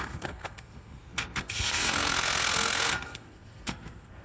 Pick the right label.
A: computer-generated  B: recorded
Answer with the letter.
A